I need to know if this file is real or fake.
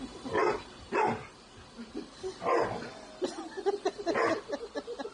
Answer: real